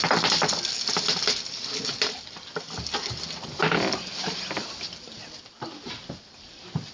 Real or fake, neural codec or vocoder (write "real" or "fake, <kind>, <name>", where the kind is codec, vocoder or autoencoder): fake, vocoder, BigVGAN v2